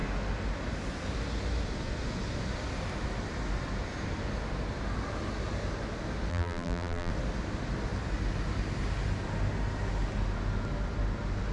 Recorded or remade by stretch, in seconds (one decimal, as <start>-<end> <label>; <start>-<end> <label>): 0.0-6.3 recorded; 6.3-7.1 remade; 7.1-11.5 recorded